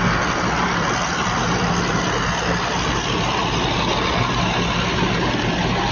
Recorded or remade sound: recorded